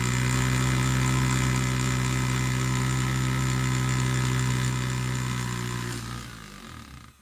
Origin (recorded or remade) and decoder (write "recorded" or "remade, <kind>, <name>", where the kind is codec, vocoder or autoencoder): recorded